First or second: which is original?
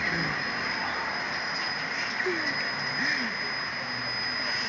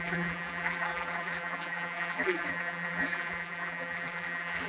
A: first